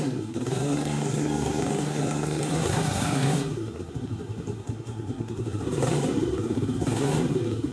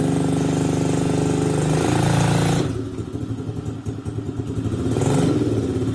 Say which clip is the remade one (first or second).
first